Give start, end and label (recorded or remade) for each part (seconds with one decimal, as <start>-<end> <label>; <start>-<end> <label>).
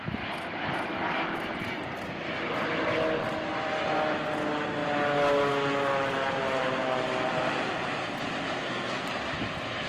0.0-8.6 recorded; 8.6-9.3 remade; 9.3-9.9 recorded